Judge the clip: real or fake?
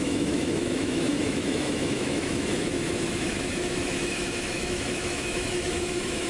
fake